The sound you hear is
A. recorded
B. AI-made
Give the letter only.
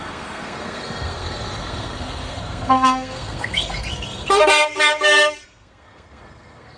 B